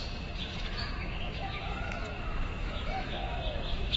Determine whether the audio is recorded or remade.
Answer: remade